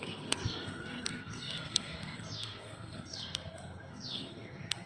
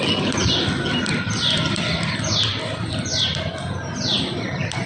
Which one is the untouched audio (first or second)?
second